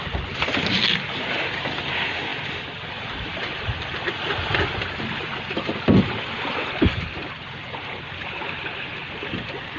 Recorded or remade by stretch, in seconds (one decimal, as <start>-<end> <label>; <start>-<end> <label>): 0.0-9.8 recorded